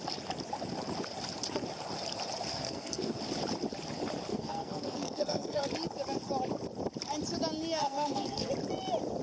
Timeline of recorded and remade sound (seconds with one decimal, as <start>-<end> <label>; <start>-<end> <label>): 0.0-2.5 recorded; 2.5-3.2 remade; 3.2-4.3 recorded; 4.3-5.6 remade; 5.6-7.8 recorded; 7.8-8.5 remade; 8.5-9.2 recorded